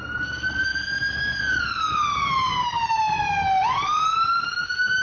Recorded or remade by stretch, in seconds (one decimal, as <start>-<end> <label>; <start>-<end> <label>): 0.0-5.0 recorded

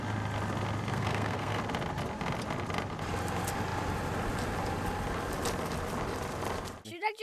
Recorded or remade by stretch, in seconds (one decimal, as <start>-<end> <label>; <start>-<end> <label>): 0.0-0.9 recorded; 0.9-1.6 remade; 1.6-7.2 recorded

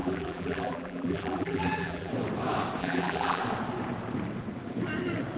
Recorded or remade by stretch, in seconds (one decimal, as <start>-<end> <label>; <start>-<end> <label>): 0.0-2.1 remade; 2.1-2.8 recorded; 2.8-3.4 remade; 3.4-5.4 recorded

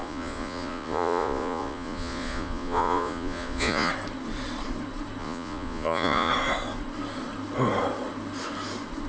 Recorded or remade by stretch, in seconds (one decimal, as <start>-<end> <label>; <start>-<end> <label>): 0.0-3.9 remade; 3.9-5.2 recorded; 5.2-6.3 remade; 6.3-9.1 recorded

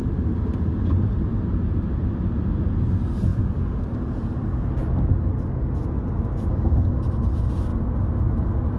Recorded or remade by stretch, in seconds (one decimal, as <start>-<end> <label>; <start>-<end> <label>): 0.0-3.3 recorded; 3.3-3.8 remade; 3.8-8.8 recorded

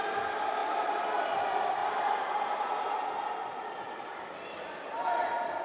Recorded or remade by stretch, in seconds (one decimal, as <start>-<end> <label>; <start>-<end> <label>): 0.0-0.6 recorded; 0.6-1.2 remade; 1.2-1.8 recorded; 1.8-5.6 remade

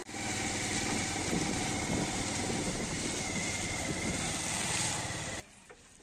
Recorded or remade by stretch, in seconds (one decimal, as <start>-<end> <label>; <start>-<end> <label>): 0.0-2.9 recorded; 2.9-4.3 remade; 4.3-6.0 recorded

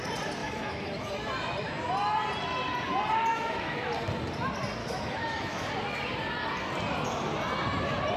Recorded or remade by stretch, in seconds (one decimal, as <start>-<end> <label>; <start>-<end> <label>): 0.0-0.4 recorded; 0.4-1.1 remade; 1.1-3.3 recorded; 3.3-3.9 remade; 3.9-4.8 recorded; 4.8-5.7 remade; 5.7-8.2 recorded